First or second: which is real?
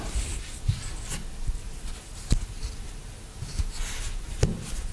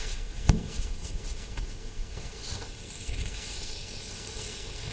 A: first